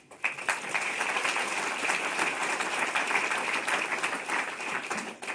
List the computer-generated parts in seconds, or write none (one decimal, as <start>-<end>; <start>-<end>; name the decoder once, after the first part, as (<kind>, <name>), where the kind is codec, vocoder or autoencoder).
2.4-2.9 (vocoder, BigVGAN v2)